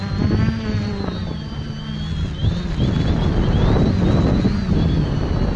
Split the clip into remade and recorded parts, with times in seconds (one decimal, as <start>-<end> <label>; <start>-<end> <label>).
0.0-1.2 recorded; 1.2-1.8 remade; 1.8-5.6 recorded